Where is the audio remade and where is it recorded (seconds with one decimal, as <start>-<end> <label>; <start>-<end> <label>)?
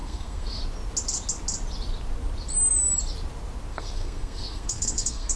0.0-0.6 remade; 0.6-3.7 recorded; 3.7-5.4 remade